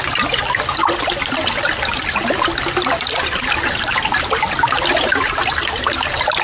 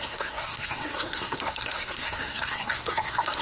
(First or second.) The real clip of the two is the first